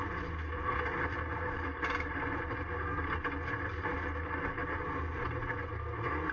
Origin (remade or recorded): recorded